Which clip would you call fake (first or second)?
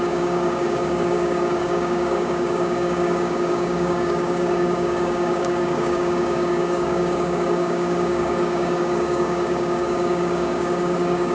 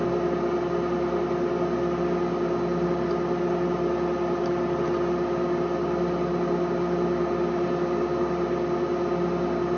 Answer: first